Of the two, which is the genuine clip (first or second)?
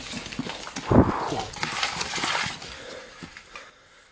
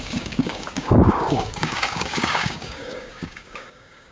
first